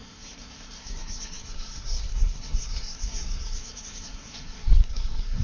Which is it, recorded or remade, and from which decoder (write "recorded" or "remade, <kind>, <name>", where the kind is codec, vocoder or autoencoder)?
remade, codec, SNAC